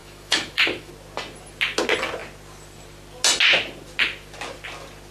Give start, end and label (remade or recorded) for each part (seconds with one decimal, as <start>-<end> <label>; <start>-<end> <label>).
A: 0.0-0.9 remade; 0.9-5.1 recorded